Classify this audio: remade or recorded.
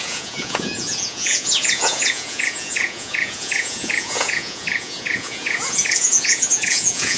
remade